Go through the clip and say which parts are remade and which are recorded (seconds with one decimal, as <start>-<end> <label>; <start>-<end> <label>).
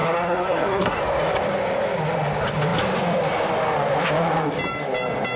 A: 0.0-1.0 remade; 1.0-5.4 recorded